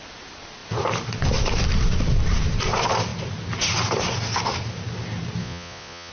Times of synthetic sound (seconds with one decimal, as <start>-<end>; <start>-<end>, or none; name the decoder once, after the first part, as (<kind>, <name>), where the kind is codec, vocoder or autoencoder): 5.4-6.1 (vocoder, Vocos)